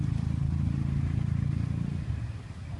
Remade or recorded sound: recorded